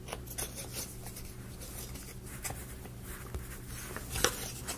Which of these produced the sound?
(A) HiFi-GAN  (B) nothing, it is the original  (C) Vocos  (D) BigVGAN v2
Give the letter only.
B